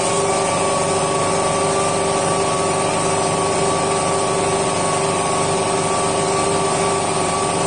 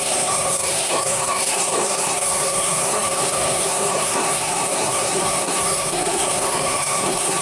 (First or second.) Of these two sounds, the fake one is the second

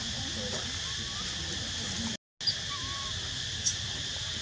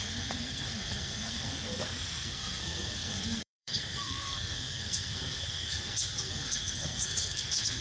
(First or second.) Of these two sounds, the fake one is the second